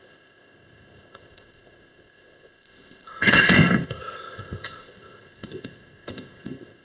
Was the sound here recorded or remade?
remade